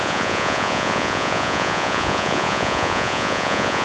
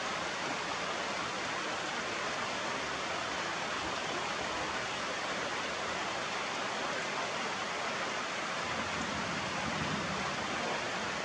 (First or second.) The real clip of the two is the second